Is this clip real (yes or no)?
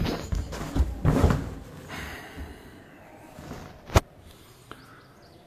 yes